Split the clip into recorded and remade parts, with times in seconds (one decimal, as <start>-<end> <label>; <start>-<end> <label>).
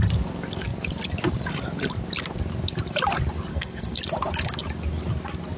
0.0-3.5 recorded; 3.5-4.0 remade; 4.0-5.6 recorded